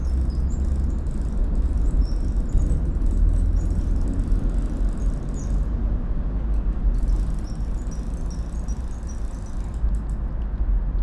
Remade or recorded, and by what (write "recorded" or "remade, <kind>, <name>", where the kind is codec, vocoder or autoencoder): recorded